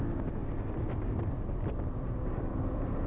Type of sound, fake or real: real